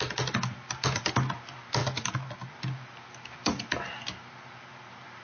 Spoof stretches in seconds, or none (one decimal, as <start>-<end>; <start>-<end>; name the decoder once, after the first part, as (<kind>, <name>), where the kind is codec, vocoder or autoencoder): none